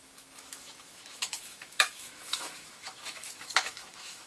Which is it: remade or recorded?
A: remade